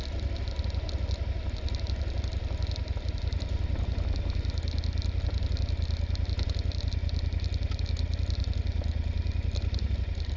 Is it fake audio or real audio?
real